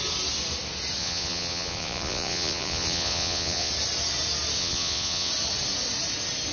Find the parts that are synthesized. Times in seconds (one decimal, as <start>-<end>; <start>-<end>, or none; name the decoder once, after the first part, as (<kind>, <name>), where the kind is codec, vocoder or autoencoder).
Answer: 1.0-3.7 (vocoder, Vocos); 4.6-5.3

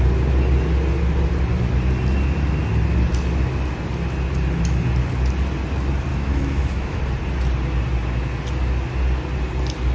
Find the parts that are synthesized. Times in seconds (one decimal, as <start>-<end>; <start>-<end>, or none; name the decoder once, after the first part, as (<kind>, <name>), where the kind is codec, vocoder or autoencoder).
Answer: 6.1-7.0 (autoencoder, DAC-VAE)

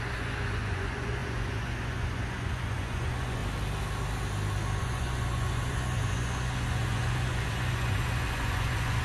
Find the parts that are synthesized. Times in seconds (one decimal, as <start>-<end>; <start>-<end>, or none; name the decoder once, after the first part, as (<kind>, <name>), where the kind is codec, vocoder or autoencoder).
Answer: 0.0-3.4 (vocoder, Vocos); 4.8-9.0

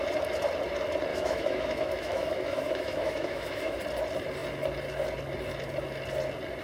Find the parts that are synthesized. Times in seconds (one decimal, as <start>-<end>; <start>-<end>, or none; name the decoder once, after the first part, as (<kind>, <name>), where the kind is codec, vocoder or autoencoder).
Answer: 1.1-3.8 (autoencoder, DAC-VAE)

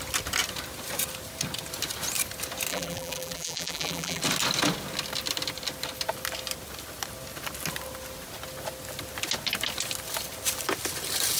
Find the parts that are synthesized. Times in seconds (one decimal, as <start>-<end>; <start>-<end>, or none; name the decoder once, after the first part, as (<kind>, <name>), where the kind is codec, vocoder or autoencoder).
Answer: 2.7-4.2 (vocoder, BigVGAN v2)

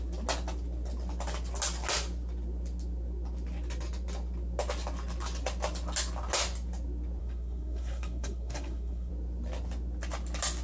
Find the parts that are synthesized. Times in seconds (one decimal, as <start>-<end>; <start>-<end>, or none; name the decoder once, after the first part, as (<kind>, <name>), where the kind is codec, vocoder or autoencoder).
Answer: 7.2-9.1 (codec, SNAC)

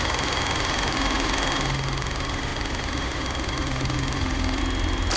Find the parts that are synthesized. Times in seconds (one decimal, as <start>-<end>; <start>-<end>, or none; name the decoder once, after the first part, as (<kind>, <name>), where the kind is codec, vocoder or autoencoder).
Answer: 0.0-4.6 (autoencoder, DAC-VAE)

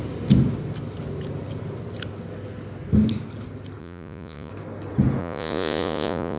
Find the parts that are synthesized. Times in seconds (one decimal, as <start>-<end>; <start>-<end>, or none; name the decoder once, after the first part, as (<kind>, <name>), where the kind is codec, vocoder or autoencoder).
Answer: 3.8-4.5 (vocoder, Vocos); 5.2-6.4